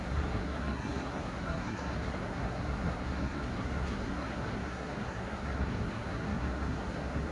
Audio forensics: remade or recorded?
remade